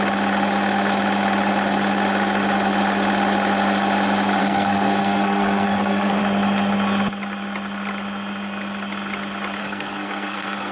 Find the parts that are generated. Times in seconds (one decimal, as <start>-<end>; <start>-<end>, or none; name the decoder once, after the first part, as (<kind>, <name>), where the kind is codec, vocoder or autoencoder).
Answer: 4.4-6.2 (codec, SNAC); 9.6-10.7